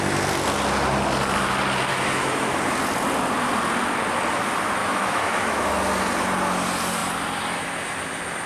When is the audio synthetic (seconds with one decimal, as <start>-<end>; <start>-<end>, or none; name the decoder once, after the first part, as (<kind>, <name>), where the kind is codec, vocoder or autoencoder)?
1.9-2.6 (autoencoder, DAC-VAE); 4.8-5.7